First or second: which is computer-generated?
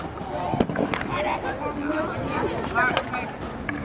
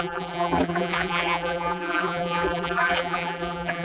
second